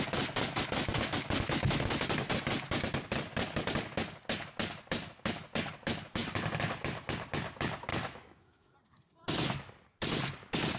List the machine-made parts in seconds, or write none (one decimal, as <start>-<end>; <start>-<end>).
7.9-8.7